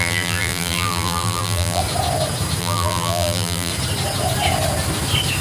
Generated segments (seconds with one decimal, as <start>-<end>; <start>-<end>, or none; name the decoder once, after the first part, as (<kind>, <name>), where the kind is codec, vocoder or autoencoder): 0.0-1.8 (vocoder, BigVGAN v2); 2.6-3.7